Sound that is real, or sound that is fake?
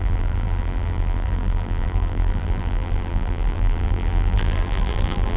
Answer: fake